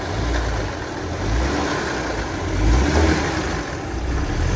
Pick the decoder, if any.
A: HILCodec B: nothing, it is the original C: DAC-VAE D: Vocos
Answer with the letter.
B